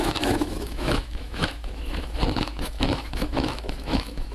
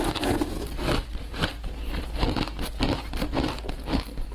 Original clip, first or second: second